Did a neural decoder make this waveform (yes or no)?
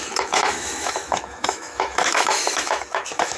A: yes